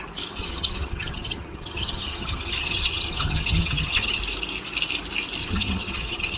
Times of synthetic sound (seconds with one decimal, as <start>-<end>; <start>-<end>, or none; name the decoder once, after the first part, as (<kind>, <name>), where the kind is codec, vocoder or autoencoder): 0.4-4.2 (vocoder, HiFi-GAN); 5.4-6.4